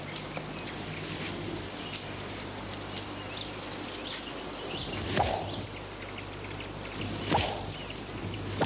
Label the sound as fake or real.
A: real